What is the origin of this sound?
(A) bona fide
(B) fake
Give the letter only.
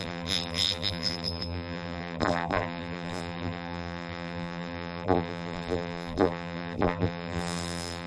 B